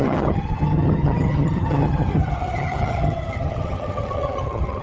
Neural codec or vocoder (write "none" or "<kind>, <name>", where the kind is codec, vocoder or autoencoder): vocoder, HiFi-GAN